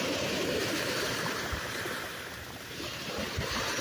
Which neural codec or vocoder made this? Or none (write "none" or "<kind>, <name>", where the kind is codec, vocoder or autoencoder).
vocoder, BigVGAN v2